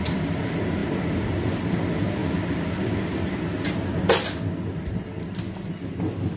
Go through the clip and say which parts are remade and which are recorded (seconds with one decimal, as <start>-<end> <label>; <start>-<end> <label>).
0.0-2.2 recorded; 2.2-3.0 remade; 3.0-6.4 recorded